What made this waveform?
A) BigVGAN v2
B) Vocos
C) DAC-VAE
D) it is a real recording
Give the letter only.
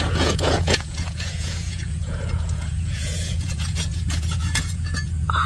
B